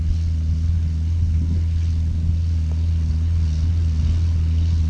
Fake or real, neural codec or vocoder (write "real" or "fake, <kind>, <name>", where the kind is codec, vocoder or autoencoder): real